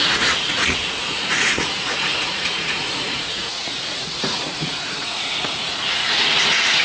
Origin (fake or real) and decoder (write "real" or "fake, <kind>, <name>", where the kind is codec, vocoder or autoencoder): fake, vocoder, Vocos